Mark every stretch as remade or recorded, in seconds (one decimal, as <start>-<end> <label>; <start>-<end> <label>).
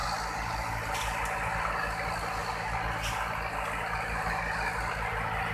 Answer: 0.0-5.5 recorded